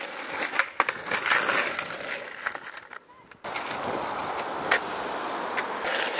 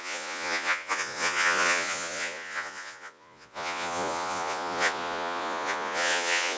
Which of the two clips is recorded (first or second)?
first